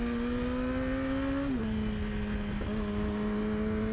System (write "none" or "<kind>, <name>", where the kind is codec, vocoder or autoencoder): none